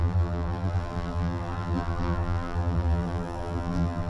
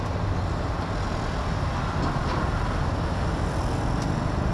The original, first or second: second